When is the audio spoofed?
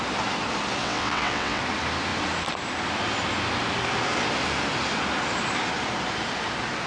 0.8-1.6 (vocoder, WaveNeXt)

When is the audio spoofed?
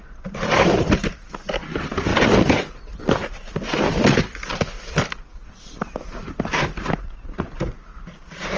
none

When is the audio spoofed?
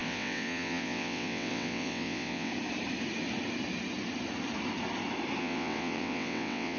0.0-2.5 (vocoder, WaveNeXt); 5.4-6.8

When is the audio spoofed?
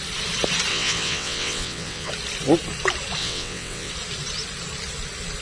0.7-2.1 (vocoder, WaveNeXt); 3.2-3.9